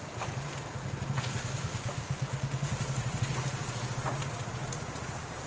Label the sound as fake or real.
fake